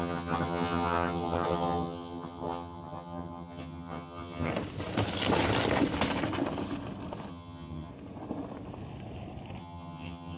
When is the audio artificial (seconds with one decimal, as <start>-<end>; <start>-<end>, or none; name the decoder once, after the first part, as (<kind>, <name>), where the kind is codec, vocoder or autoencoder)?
0.0-4.5 (vocoder, HiFi-GAN); 7.3-7.9; 9.6-10.4